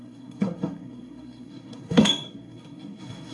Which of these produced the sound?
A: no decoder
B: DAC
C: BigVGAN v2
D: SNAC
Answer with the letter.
D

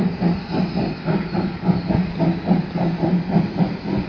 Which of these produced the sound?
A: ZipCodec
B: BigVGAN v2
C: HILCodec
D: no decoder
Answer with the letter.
D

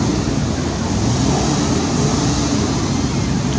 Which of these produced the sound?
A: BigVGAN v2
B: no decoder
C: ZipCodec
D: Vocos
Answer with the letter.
B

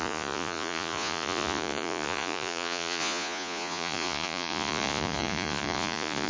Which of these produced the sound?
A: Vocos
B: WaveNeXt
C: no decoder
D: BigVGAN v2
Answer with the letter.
A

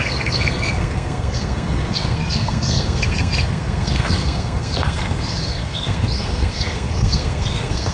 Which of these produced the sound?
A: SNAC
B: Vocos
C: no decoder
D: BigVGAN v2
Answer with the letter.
A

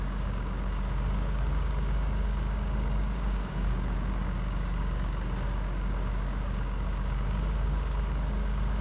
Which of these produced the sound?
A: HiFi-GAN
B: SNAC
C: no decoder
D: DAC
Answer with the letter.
D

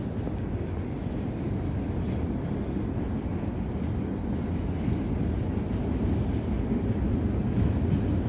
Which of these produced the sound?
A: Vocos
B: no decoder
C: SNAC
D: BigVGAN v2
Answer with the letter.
B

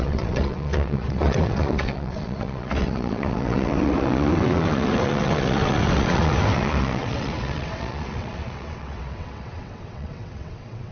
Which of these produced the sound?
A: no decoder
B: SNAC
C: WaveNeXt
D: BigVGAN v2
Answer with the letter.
C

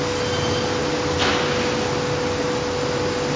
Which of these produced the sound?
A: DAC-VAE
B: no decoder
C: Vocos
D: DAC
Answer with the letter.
B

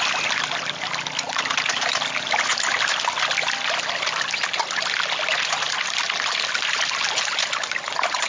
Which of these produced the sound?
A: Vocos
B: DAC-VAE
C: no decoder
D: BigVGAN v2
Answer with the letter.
C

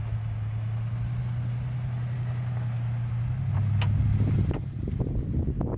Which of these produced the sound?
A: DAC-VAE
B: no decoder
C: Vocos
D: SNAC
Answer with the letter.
B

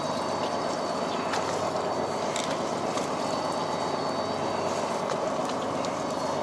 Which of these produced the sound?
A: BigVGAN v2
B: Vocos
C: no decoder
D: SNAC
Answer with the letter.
C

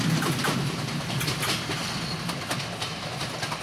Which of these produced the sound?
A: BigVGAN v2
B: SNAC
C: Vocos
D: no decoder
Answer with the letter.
D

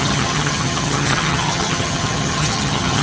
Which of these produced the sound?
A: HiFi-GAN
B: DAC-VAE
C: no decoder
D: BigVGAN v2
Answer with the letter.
A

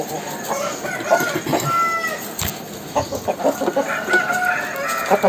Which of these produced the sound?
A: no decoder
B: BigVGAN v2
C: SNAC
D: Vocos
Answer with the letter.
A